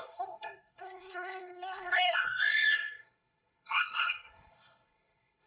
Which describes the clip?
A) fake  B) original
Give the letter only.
A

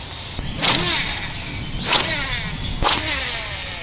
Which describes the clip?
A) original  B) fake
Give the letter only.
A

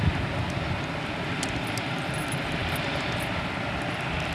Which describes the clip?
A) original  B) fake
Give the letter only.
A